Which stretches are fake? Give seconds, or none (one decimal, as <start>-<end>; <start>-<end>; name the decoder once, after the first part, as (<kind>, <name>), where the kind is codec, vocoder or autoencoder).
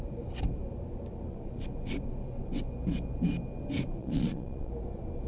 4.0-4.7 (vocoder, Vocos)